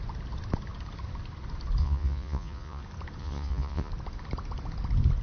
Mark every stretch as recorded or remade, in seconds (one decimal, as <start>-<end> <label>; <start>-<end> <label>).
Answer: 0.0-1.8 recorded; 1.8-2.8 remade; 2.8-3.2 recorded; 3.2-3.9 remade; 3.9-5.2 recorded